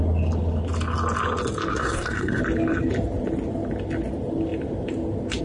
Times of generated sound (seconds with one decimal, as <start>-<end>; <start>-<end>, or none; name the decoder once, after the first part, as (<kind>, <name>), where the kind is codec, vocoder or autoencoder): 1.7-2.4 (codec, SNAC)